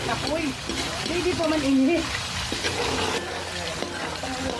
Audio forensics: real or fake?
real